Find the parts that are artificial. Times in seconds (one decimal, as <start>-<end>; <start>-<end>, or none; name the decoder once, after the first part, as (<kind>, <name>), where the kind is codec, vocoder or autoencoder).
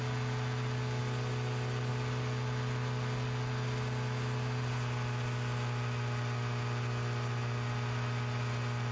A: none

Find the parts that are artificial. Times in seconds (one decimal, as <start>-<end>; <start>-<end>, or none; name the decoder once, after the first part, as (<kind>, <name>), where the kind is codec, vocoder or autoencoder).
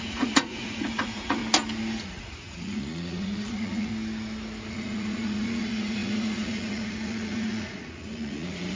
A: 0.0-1.4 (vocoder, Vocos); 2.0-3.9; 4.7-8.8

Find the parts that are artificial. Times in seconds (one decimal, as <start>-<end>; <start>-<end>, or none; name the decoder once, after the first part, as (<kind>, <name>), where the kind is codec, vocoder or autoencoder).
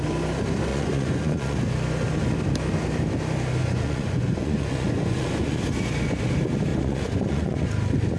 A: 0.7-1.6 (vocoder, Vocos); 3.6-5.6; 6.7-7.7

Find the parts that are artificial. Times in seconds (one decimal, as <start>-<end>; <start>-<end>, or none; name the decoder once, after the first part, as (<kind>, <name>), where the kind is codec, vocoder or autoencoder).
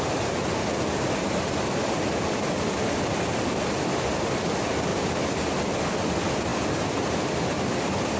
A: none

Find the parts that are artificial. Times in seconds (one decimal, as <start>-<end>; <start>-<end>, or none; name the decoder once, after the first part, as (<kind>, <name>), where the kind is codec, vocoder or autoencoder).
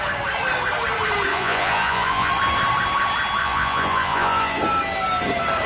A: 1.3-2.3 (vocoder, Vocos); 3.4-4.6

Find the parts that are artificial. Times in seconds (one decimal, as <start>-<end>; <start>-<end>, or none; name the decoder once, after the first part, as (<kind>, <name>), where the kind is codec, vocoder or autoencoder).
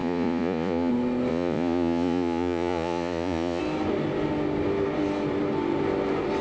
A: 0.0-0.9 (vocoder, Vocos); 1.3-3.6